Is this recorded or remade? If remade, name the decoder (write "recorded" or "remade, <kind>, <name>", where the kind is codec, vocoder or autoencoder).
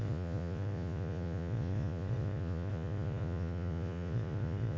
remade, vocoder, Vocos